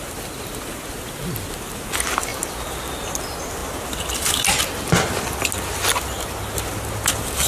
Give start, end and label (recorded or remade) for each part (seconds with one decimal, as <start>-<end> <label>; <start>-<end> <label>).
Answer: 0.0-7.5 recorded